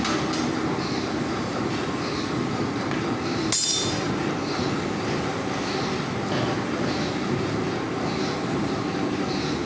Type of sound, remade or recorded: recorded